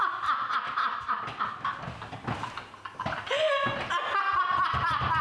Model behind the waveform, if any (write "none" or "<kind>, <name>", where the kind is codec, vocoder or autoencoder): none